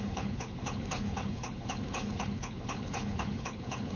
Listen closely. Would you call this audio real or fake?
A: fake